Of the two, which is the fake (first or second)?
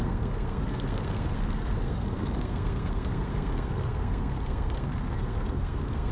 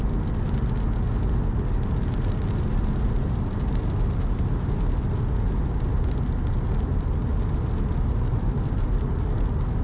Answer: first